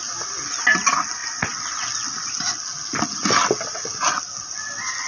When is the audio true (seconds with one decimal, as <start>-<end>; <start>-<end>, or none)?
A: 0.0-5.1